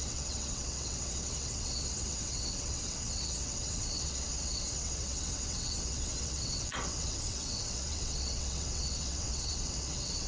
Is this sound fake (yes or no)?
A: yes